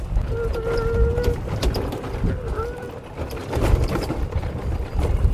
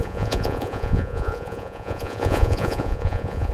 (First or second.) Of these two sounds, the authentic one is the first